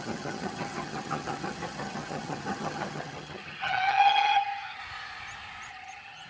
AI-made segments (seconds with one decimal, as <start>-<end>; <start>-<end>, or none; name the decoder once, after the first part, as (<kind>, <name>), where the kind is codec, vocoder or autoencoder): 0.0-4.8 (vocoder, HiFi-GAN); 5.7-6.3